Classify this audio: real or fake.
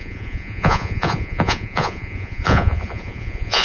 fake